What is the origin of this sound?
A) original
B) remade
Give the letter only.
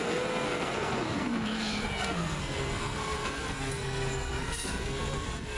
B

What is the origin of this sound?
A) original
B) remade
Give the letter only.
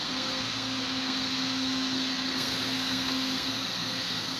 B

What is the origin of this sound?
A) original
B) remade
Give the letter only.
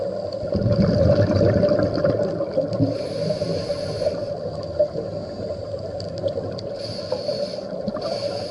A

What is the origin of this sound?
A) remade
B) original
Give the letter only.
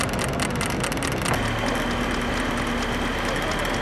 B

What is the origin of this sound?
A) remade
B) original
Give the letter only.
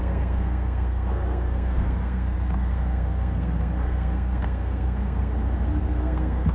A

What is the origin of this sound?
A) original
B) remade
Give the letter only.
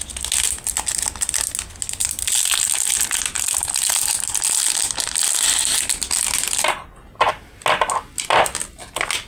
A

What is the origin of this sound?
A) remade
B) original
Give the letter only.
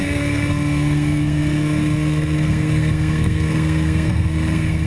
A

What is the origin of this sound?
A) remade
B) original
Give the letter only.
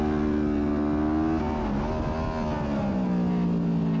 B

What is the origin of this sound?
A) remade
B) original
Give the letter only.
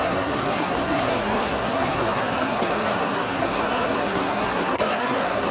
A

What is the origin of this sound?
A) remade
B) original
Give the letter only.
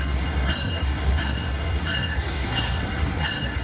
A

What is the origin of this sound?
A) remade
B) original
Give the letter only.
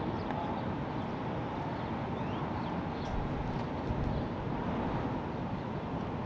B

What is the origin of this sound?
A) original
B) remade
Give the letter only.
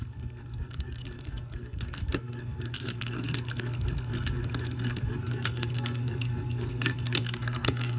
B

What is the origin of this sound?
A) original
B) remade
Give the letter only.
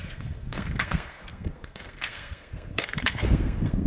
B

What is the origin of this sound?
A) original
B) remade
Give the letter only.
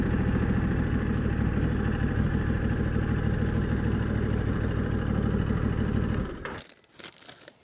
A